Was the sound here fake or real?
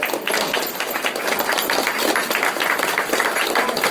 real